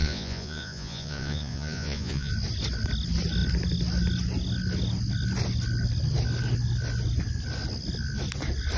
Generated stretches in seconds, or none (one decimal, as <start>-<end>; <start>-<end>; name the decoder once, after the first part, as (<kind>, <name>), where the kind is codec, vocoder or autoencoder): 0.0-2.3 (vocoder, Vocos)